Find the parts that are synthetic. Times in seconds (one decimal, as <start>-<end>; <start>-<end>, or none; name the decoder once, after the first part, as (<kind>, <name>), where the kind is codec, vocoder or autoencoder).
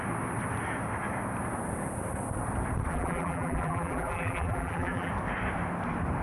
2.9-5.1 (vocoder, BigVGAN v2)